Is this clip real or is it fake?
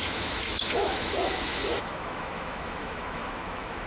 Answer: fake